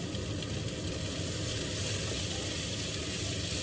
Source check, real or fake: real